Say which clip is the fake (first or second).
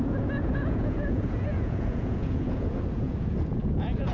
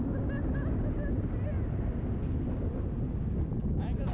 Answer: first